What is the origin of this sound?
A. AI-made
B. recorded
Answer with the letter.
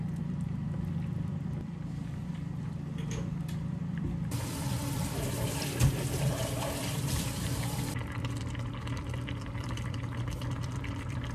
A